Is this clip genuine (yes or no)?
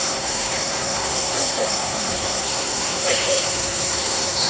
no